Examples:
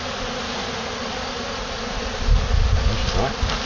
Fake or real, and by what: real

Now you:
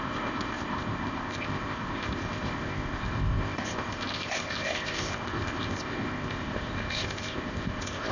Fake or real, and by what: fake, codec, ZipCodec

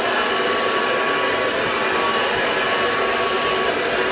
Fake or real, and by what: real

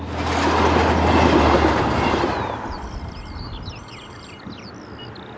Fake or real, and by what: real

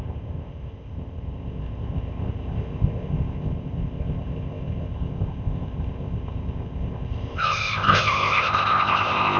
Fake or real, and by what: fake, codec, ZipCodec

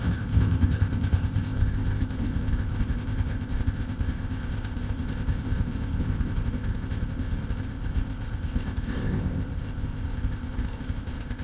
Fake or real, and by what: fake, codec, ZipCodec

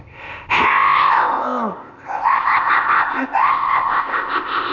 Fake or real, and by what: fake, codec, ZipCodec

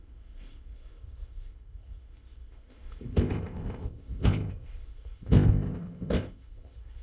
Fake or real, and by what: fake, codec, ZipCodec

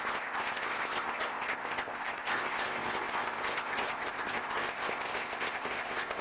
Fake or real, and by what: fake, codec, ZipCodec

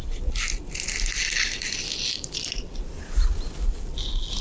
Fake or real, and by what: real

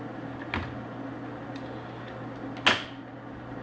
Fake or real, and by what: real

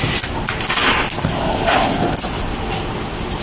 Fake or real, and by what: real